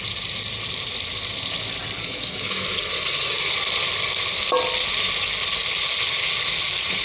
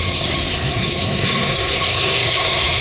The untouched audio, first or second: first